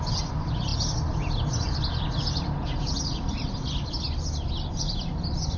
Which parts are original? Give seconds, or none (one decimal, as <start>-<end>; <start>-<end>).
0.0-5.6